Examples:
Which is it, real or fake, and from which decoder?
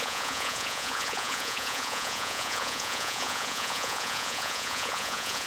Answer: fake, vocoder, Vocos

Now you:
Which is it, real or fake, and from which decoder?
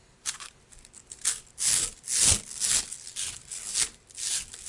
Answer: real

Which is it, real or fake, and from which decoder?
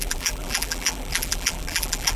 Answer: fake, vocoder, BigVGAN v2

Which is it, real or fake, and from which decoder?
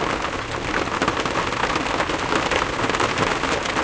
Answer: real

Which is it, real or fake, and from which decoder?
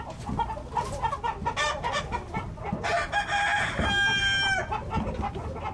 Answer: real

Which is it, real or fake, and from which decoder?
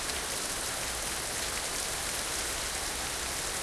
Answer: real